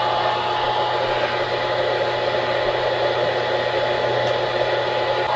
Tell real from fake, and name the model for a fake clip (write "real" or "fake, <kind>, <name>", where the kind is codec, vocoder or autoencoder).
real